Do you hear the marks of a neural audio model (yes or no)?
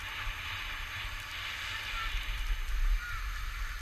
no